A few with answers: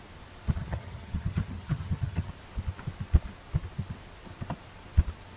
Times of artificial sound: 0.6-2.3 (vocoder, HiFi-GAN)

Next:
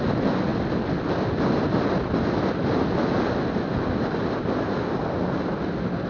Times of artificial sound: none

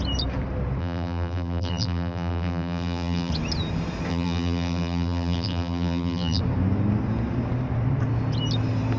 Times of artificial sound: 0.8-3.3 (vocoder, BigVGAN v2); 4.1-6.4

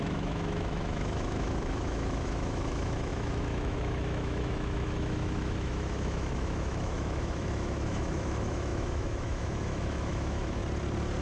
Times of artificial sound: 0.0-10.6 (autoencoder, DAC-VAE)

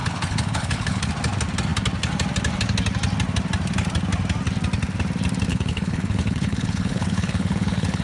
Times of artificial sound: 0.0-1.1 (codec, HILCodec); 5.5-8.0

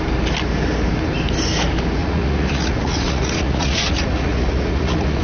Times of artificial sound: 2.0-5.2 (vocoder, Vocos)

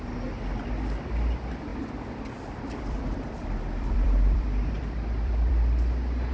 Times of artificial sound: 1.7-5.5 (vocoder, BigVGAN v2)